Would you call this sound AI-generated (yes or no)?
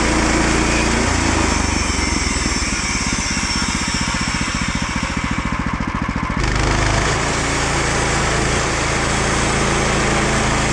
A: no